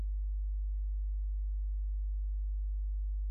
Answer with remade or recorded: recorded